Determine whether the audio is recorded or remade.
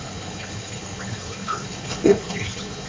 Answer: remade